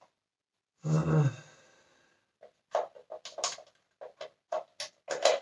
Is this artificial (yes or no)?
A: no